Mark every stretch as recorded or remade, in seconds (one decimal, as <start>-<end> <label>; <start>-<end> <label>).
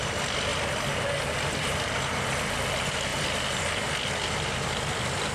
0.0-5.3 recorded